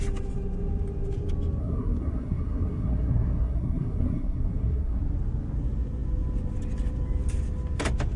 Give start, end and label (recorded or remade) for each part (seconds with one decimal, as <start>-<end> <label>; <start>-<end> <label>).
0.0-1.6 recorded; 1.6-5.0 remade; 5.0-8.2 recorded